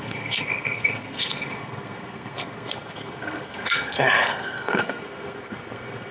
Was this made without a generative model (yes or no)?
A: no